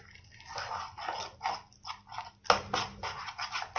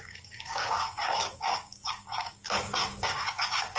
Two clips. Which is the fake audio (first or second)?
second